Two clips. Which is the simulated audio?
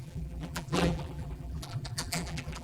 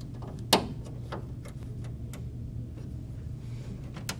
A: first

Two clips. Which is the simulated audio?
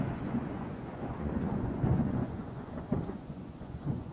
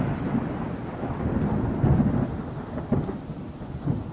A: first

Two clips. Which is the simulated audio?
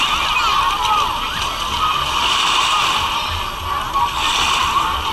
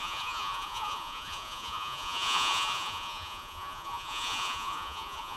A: second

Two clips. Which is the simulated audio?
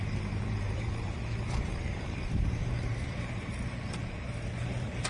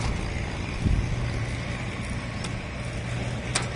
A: first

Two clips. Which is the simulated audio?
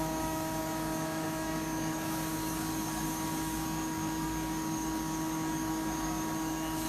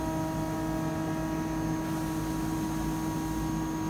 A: first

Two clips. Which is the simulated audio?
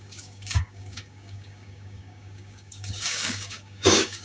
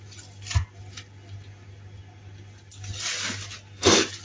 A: first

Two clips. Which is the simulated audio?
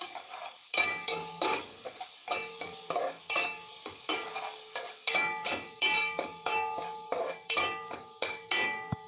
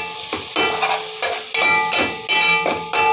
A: first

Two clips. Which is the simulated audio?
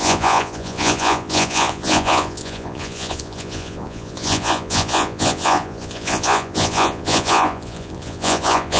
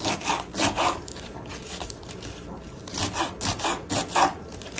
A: first